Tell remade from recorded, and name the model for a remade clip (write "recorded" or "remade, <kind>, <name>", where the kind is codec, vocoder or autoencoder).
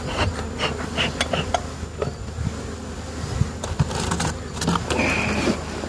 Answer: recorded